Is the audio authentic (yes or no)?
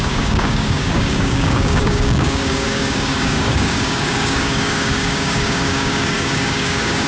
no